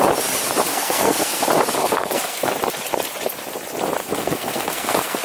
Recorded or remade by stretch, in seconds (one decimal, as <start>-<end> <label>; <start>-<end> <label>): 0.0-0.7 recorded; 0.7-1.4 remade; 1.4-1.8 recorded; 1.8-2.5 remade; 2.5-4.0 recorded; 4.0-5.2 remade